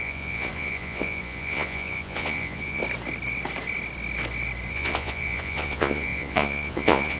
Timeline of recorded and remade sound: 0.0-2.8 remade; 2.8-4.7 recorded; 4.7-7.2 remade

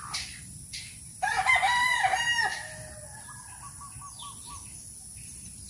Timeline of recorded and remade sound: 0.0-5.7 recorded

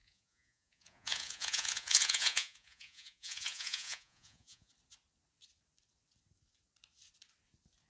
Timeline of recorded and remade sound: 0.0-4.7 remade; 4.7-7.9 recorded

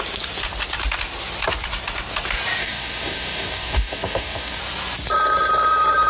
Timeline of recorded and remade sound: 0.0-2.6 recorded; 2.6-4.6 remade; 4.6-6.1 recorded

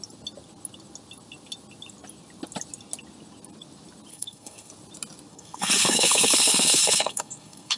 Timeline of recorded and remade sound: 0.0-4.1 recorded; 4.1-4.7 remade; 4.7-5.3 recorded; 5.3-7.8 remade